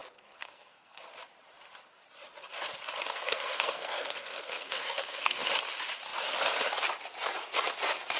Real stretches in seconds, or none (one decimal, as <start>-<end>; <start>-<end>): 1.1-3.1; 5.5-8.2